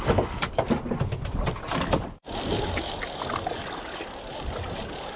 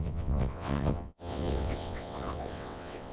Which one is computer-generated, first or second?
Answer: second